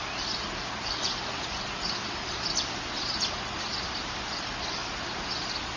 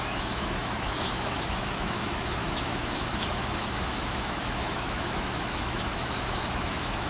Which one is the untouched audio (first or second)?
first